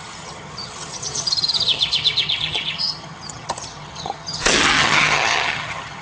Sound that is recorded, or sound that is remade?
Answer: remade